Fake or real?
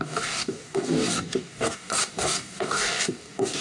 fake